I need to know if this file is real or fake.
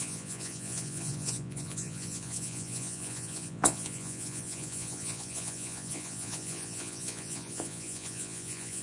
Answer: fake